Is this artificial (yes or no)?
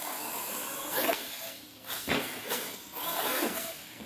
yes